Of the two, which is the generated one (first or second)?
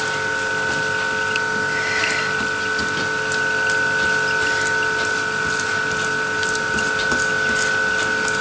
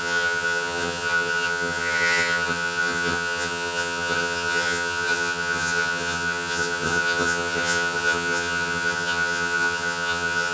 second